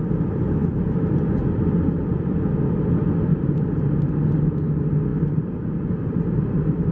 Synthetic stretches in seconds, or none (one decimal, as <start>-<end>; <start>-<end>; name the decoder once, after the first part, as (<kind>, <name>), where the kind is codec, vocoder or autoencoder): 3.3-4.0 (vocoder, BigVGAN v2); 5.1-6.9

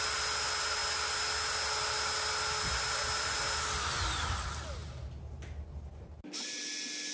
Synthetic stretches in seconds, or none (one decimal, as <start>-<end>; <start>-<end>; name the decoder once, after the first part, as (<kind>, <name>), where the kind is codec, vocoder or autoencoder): none

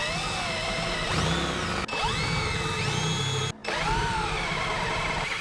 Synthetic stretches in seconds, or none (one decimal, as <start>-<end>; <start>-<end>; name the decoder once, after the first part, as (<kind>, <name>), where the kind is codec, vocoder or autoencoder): 3.6-5.4 (vocoder, BigVGAN v2)

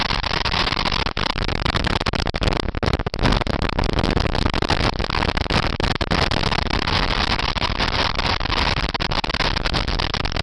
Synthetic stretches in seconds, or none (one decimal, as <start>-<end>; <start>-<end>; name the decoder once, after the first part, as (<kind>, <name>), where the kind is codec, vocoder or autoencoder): 1.2-1.9 (vocoder, BigVGAN v2)

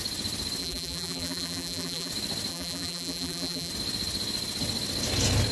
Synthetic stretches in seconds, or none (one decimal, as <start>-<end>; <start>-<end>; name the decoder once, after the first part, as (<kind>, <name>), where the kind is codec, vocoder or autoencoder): 0.6-2.1 (vocoder, BigVGAN v2); 2.5-3.7

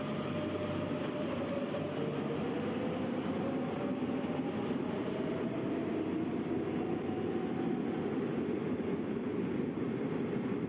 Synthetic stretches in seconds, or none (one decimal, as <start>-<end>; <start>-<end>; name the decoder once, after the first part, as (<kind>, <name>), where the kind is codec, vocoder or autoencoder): none

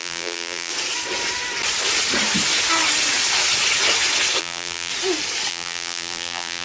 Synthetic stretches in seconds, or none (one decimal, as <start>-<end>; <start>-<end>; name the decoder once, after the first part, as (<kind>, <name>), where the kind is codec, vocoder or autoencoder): 0.0-0.7 (vocoder, BigVGAN v2); 4.4-4.9; 5.5-6.6

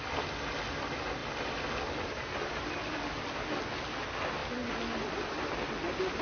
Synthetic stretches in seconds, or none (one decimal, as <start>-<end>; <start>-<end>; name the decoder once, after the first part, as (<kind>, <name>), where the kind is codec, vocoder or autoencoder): none